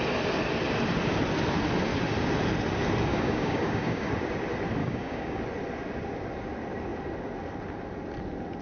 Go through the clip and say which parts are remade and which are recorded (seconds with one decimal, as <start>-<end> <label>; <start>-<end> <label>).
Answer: 0.0-3.1 recorded; 3.1-4.1 remade; 4.1-4.8 recorded; 4.8-5.4 remade; 5.4-8.6 recorded